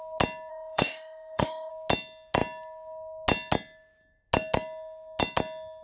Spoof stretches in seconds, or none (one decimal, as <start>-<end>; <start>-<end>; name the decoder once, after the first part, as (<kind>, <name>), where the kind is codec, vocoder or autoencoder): 0.5-1.7 (autoencoder, DAC-VAE)